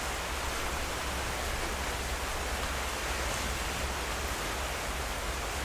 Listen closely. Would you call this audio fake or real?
real